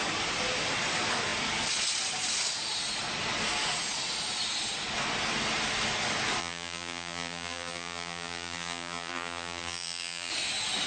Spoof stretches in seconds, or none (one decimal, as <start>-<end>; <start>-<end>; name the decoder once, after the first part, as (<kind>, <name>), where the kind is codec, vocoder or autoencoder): 6.4-10.3 (vocoder, BigVGAN v2)